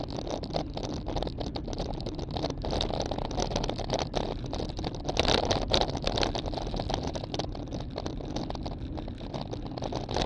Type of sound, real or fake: real